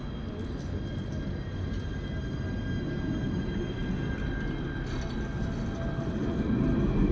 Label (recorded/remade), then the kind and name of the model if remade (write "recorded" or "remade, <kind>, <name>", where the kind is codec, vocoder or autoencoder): recorded